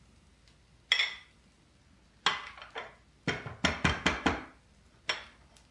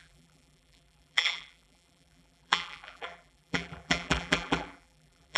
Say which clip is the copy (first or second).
second